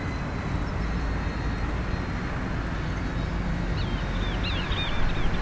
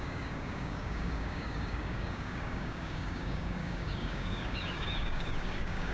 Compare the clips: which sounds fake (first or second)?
second